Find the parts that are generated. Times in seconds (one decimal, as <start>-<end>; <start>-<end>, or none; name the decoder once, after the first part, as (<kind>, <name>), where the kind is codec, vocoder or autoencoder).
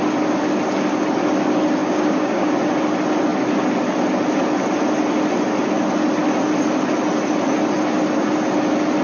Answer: 1.8-2.5 (codec, DAC)